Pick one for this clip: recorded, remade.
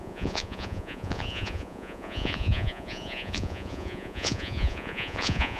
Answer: remade